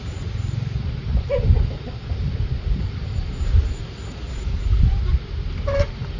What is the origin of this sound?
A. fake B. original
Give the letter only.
B